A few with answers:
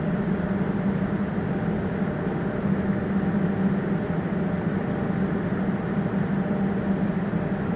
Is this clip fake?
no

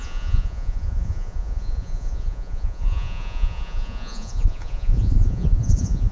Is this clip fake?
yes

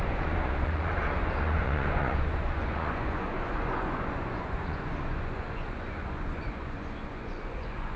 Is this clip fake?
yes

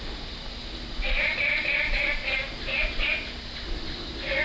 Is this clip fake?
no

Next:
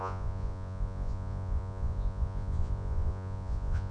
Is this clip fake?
yes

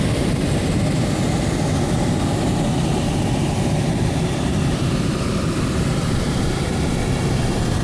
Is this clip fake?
no